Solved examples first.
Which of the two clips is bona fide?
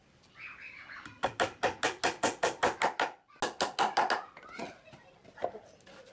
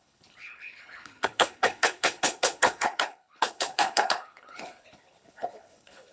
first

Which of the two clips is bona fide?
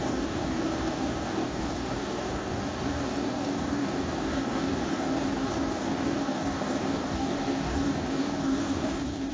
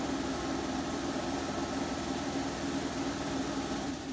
second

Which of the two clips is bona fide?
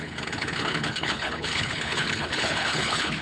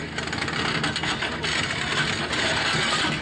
second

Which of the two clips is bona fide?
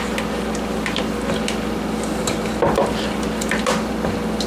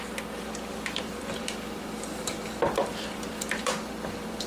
first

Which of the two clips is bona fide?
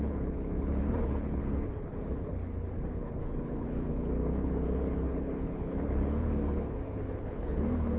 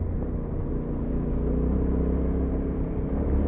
second